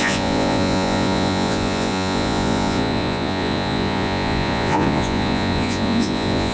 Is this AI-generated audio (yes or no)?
yes